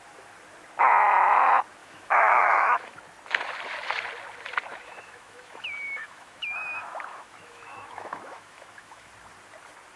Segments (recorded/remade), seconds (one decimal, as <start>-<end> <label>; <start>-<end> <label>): 0.0-1.8 recorded; 1.8-3.0 remade; 3.0-4.7 recorded; 4.7-9.1 remade; 9.1-10.0 recorded